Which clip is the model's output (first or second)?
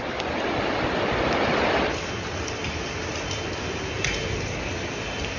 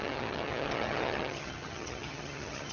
second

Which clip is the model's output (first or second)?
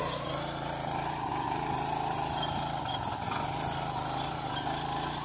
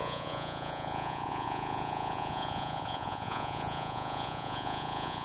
second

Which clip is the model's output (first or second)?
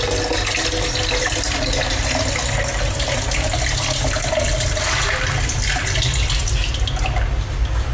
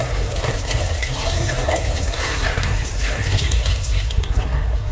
second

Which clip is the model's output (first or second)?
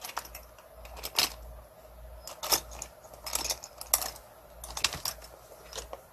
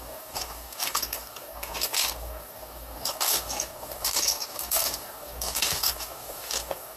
second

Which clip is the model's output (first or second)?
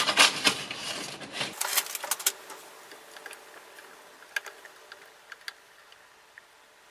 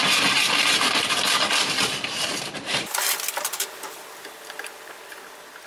second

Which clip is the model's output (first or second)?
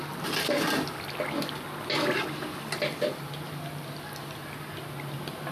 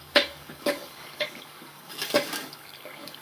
second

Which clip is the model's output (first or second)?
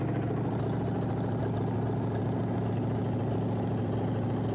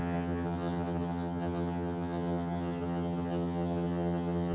second